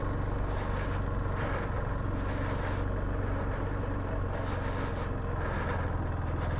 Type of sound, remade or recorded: recorded